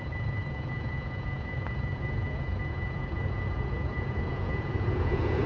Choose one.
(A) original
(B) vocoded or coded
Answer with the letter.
B